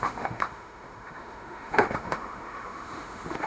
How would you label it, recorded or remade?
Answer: remade